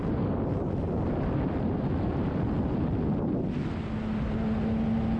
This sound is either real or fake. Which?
real